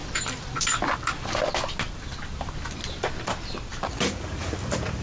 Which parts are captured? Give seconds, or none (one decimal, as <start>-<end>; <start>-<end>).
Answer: 1.4-5.0